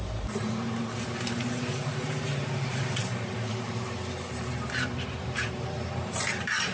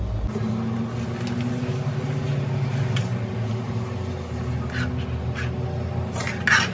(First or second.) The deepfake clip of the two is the first